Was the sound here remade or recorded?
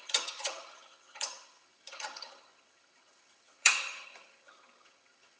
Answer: remade